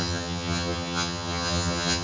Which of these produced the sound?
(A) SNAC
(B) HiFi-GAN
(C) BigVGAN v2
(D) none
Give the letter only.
B